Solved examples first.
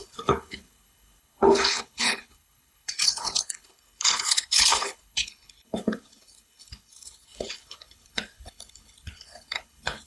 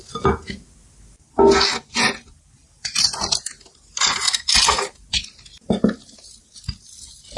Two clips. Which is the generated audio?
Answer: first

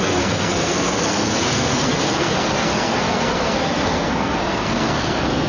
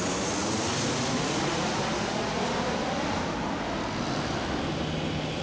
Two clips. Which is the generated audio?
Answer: first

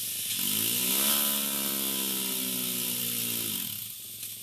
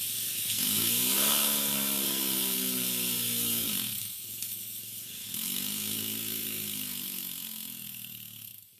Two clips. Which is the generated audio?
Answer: second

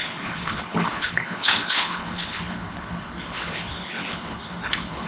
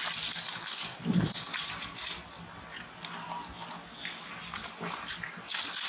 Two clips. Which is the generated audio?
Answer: first